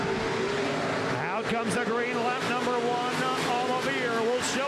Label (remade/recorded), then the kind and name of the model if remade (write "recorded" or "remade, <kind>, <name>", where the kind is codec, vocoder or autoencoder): recorded